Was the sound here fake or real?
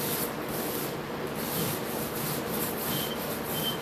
real